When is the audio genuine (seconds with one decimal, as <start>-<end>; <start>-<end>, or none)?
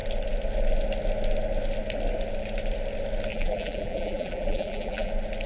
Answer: 0.0-3.3; 5.1-5.5